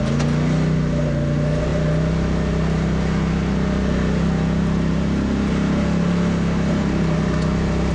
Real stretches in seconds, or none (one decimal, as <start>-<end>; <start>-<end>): 0.0-7.9

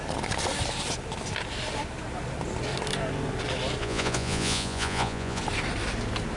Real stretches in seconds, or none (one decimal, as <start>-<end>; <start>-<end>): 0.0-3.8; 5.4-6.4